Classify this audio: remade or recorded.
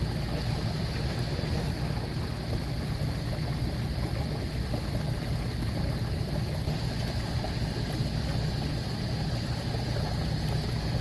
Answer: recorded